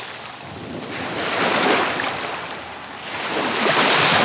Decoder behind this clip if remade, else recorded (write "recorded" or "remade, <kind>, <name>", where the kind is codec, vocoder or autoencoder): recorded